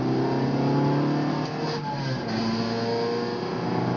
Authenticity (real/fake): real